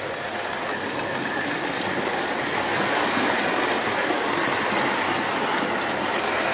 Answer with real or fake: real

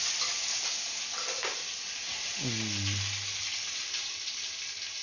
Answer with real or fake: real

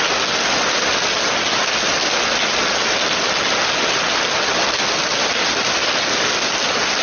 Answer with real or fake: real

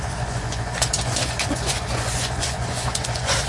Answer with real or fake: fake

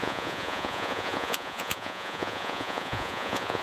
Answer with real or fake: fake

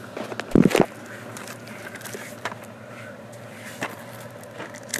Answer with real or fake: real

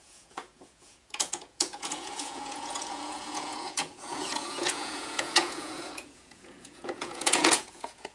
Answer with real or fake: fake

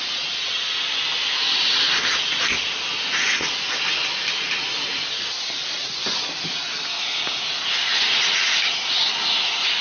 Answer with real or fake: real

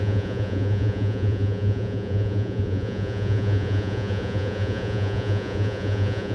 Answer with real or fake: fake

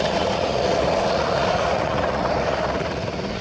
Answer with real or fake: fake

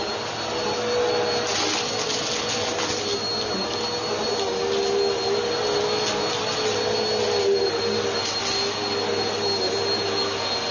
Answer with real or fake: real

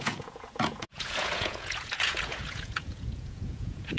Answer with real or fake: fake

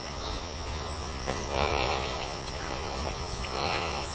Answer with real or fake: fake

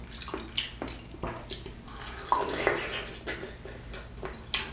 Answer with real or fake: real